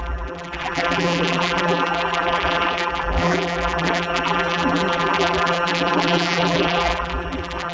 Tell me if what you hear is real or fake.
fake